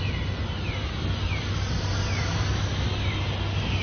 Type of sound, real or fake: fake